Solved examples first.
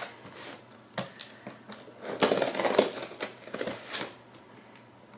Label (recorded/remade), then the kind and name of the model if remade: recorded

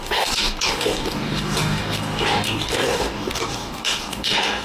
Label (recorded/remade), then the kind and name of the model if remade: remade, codec, DAC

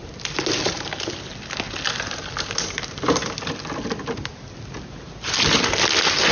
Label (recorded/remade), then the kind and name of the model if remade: recorded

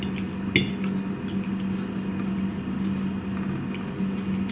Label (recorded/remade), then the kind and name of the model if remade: recorded